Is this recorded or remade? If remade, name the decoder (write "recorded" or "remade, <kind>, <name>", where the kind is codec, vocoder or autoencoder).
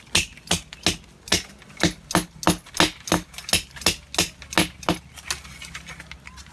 recorded